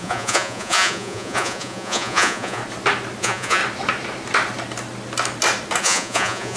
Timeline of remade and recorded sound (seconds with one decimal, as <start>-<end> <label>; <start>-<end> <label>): 0.0-2.6 remade; 2.6-3.2 recorded; 3.2-3.6 remade; 3.6-5.8 recorded; 5.8-6.6 remade